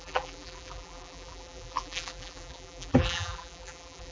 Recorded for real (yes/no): no